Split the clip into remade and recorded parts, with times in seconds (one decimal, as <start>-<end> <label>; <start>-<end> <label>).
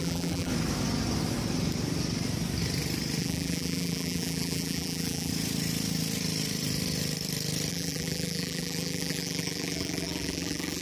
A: 0.0-0.5 remade; 0.5-3.2 recorded; 3.2-5.3 remade; 5.3-7.7 recorded; 7.7-10.8 remade